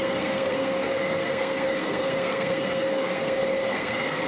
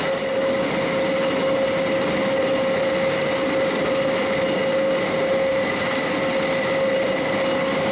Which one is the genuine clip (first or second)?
second